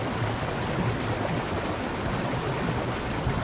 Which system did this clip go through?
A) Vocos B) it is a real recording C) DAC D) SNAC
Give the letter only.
B